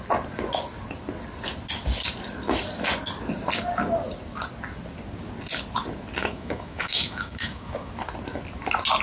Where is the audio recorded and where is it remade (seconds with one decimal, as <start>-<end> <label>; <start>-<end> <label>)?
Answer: 0.0-6.2 recorded; 6.2-7.9 remade; 7.9-9.0 recorded